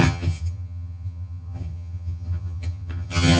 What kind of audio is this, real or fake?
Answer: fake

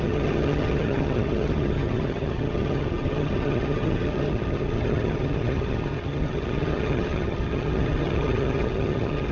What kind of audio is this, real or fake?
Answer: fake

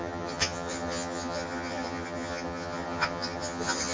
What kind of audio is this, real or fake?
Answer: fake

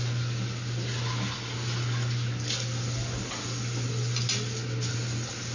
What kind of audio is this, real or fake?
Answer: real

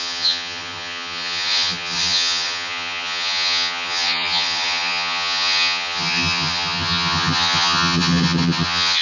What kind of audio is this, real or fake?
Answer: fake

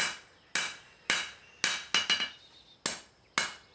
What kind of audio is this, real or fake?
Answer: real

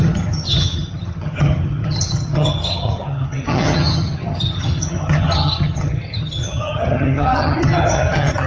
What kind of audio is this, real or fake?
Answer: fake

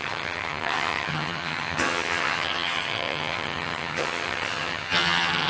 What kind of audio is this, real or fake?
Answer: fake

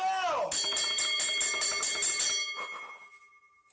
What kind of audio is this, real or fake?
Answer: real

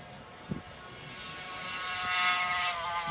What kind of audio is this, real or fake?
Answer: real